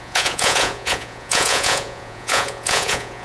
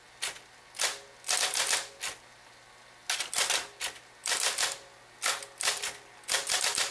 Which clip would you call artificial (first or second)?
first